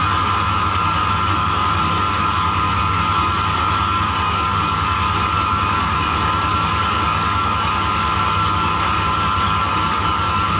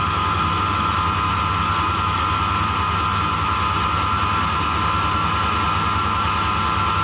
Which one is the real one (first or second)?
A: second